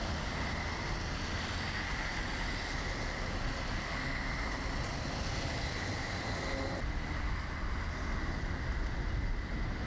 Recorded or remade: recorded